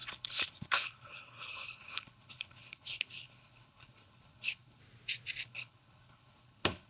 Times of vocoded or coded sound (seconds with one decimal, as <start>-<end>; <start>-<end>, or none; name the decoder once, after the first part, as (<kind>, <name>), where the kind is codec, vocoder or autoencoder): 0.0-4.8 (codec, HILCodec); 5.4-6.9